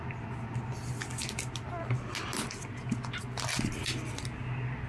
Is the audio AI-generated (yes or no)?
no